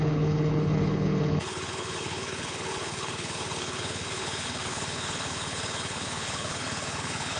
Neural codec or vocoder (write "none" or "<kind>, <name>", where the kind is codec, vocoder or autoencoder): codec, HILCodec